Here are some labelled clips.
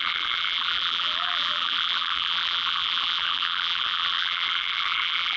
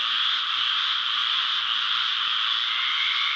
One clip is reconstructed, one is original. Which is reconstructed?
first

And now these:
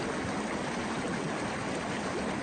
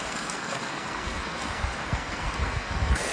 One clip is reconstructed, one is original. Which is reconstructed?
second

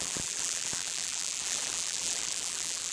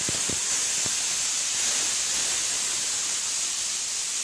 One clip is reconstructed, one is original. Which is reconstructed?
first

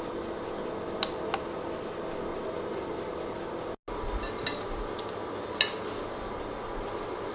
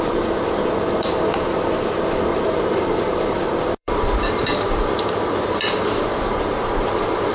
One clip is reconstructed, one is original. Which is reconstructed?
second